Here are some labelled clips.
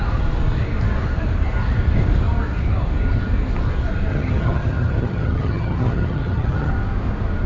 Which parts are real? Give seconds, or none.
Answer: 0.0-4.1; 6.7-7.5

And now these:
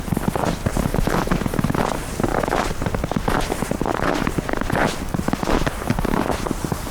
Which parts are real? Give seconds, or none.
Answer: 0.0-2.3; 6.2-6.9